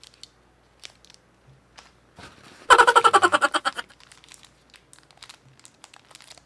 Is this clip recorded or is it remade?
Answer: recorded